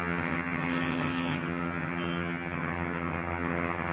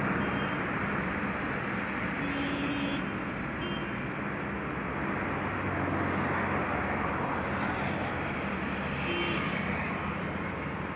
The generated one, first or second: first